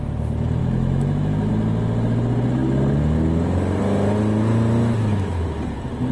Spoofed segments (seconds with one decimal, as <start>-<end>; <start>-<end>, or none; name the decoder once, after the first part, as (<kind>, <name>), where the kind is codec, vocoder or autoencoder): 0.6-1.5 (autoencoder, DAC-VAE)